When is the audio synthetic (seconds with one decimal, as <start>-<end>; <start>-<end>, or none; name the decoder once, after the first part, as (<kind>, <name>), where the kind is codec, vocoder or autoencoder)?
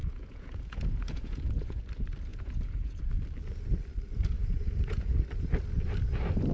0.0-1.8 (vocoder, Vocos); 2.3-3.0; 4.4-5.1